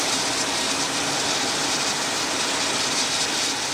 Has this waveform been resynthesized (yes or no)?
no